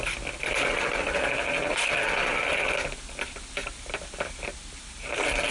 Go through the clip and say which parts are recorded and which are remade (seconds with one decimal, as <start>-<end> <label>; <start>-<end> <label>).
0.0-5.5 recorded